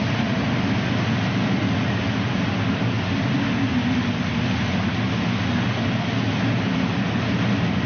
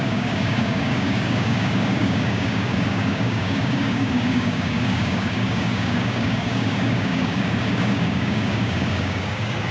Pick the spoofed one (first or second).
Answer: second